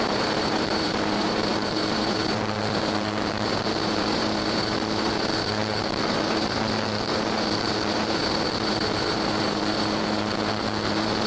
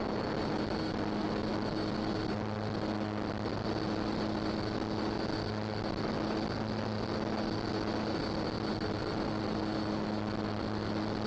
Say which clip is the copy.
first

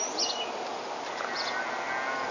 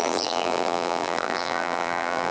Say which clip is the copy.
second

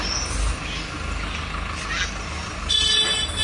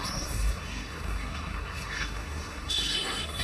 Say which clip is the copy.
second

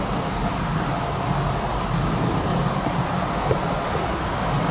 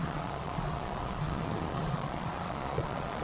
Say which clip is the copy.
second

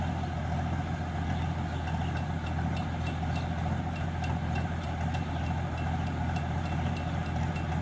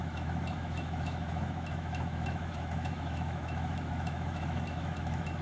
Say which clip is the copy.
second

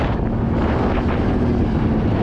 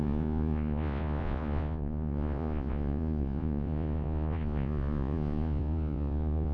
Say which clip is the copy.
second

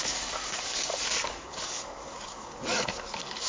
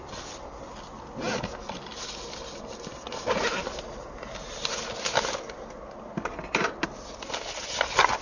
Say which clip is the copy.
first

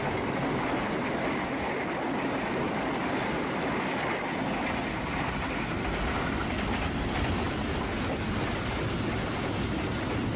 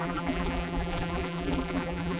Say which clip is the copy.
second